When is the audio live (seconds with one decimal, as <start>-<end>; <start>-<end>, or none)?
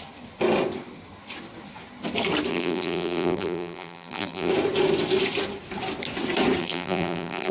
0.0-2.5; 4.5-6.6